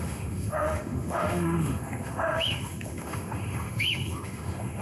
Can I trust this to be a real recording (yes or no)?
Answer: no